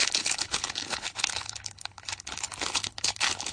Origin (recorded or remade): remade